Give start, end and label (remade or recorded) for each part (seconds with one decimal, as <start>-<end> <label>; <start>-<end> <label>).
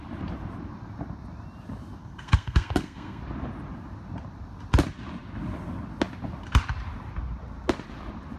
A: 0.0-2.0 recorded; 2.0-3.2 remade; 3.2-8.4 recorded